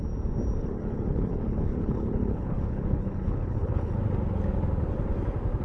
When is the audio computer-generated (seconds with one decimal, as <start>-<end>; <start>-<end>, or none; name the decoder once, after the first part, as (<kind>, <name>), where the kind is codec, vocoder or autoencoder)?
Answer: 0.6-4.0 (codec, HILCodec)